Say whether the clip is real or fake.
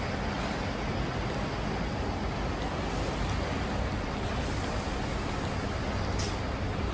real